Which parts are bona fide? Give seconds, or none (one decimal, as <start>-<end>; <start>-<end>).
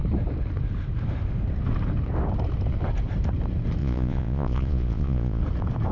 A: 0.0-3.8; 5.4-5.9